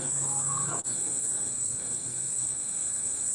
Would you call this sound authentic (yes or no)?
no